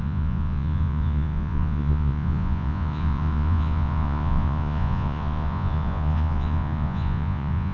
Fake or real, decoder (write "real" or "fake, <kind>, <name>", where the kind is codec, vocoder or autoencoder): fake, vocoder, Vocos